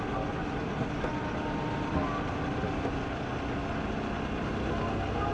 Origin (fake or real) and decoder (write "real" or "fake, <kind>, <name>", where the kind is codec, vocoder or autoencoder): real